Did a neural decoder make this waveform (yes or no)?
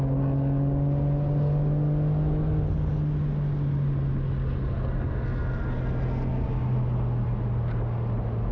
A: no